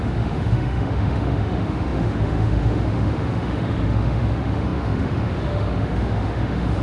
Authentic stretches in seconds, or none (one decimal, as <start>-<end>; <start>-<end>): none

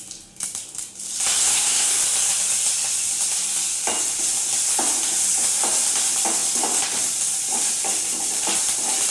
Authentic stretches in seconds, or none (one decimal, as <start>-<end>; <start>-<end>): 0.0-1.4; 2.0-9.1